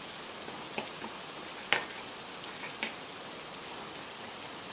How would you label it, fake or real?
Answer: real